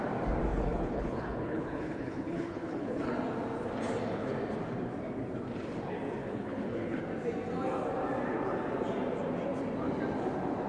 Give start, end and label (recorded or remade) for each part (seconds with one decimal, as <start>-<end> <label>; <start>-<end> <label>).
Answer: 0.0-0.5 recorded; 0.5-3.1 remade; 3.1-6.2 recorded; 6.2-7.0 remade; 7.0-10.7 recorded